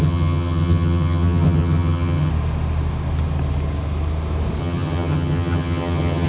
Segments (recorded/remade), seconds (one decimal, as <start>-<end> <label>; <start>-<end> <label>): 0.0-2.3 remade; 2.3-4.6 recorded; 4.6-6.3 remade